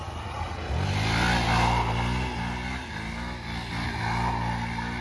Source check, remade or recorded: recorded